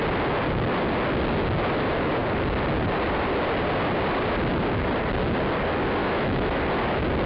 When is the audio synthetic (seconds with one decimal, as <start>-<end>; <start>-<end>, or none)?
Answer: 6.0-6.6